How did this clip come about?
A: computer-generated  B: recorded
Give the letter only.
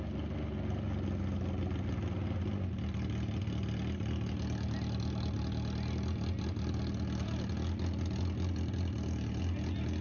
B